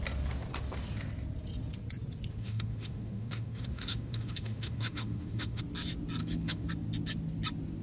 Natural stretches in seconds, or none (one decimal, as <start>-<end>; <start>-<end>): 0.0-2.3; 5.6-6.2; 6.7-7.8